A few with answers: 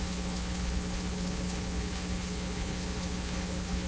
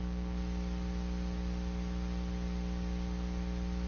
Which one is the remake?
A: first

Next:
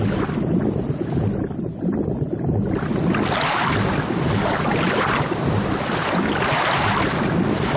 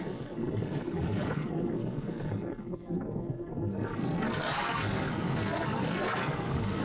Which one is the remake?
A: second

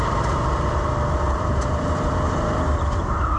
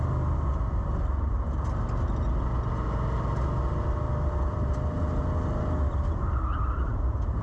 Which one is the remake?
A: first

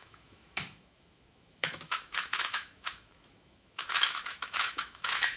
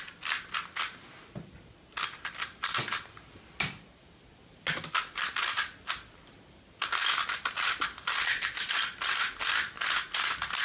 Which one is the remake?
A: first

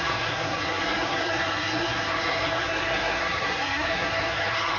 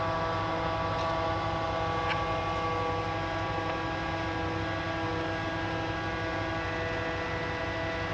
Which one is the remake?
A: first